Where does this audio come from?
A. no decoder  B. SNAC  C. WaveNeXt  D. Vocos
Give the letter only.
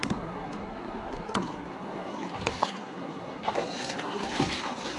B